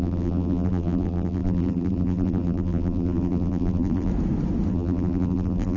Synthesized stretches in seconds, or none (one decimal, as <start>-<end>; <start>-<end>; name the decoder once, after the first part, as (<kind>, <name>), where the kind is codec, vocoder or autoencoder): 0.0-4.1 (vocoder, BigVGAN v2); 4.7-5.8